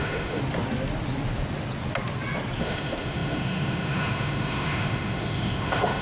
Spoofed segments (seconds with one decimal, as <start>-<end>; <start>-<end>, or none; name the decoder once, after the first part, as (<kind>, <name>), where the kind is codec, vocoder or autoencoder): 0.0-0.4 (autoencoder, DAC-VAE); 2.6-6.0